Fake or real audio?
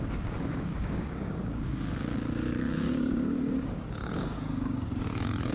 fake